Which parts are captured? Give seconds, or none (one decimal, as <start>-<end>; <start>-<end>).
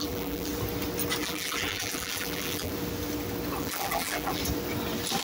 0.5-1.2; 2.7-3.6; 4.4-5.2